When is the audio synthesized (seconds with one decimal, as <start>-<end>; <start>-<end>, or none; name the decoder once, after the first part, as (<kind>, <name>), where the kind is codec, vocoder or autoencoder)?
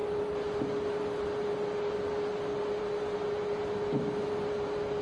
none